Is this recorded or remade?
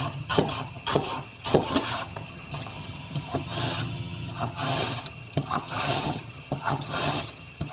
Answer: remade